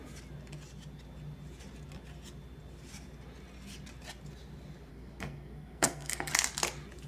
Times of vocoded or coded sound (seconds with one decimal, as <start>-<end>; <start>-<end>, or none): 4.9-6.3